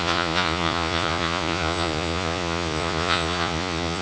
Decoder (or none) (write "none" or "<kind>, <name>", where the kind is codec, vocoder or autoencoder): vocoder, Vocos